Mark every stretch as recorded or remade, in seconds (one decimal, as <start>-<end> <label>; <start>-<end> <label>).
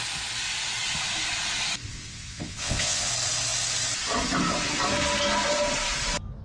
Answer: 0.0-1.9 recorded; 1.9-3.1 remade; 3.1-6.4 recorded